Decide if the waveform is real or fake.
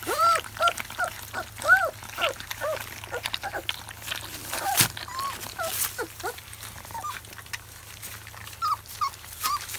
real